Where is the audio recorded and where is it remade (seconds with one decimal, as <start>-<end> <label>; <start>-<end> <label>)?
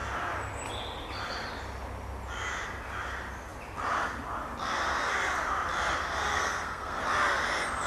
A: 0.0-6.3 recorded; 6.3-7.0 remade; 7.0-7.9 recorded